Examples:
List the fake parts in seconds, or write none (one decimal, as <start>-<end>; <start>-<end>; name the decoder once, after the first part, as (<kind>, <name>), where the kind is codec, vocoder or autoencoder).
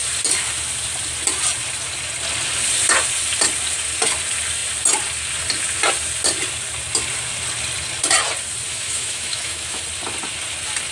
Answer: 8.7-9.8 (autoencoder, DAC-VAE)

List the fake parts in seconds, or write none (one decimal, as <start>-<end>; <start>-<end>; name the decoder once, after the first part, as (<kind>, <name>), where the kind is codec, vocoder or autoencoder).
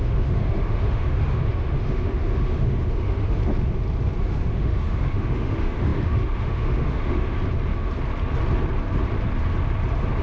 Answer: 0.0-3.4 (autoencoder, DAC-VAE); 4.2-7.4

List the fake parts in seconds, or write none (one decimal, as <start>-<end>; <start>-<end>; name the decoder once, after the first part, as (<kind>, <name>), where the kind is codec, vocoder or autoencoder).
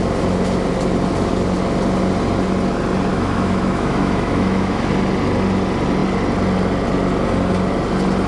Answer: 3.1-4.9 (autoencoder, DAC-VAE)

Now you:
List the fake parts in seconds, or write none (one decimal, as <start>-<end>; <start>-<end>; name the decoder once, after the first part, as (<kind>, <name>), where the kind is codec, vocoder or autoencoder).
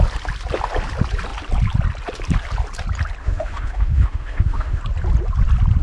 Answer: 3.2-4.8 (autoencoder, DAC-VAE)